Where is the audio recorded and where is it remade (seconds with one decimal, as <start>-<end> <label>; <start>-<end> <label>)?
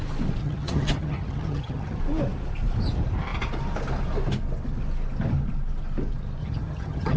0.0-0.4 recorded; 0.4-2.0 remade; 2.0-6.4 recorded; 6.4-7.2 remade